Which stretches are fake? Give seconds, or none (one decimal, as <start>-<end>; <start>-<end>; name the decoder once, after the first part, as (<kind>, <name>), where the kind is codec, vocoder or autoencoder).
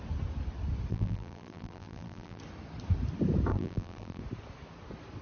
0.9-2.4 (vocoder, BigVGAN v2); 3.5-4.2